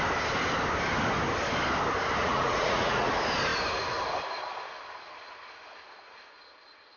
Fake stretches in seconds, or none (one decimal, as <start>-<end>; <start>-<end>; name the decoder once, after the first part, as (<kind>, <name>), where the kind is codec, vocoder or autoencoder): 2.2-3.1 (vocoder, Vocos)